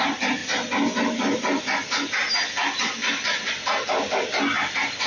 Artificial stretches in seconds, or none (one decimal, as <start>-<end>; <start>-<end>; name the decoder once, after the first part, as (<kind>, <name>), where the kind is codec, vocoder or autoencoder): none